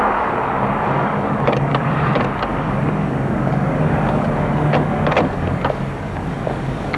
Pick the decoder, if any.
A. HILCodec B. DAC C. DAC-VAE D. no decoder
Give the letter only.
B